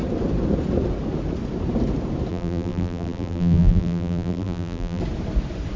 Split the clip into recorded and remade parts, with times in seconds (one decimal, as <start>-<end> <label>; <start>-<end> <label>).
0.0-2.3 recorded; 2.3-5.0 remade; 5.0-5.8 recorded